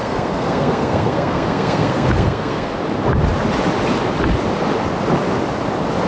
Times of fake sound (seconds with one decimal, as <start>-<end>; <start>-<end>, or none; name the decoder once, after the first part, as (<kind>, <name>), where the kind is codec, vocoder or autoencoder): 0.0-2.7 (codec, SNAC)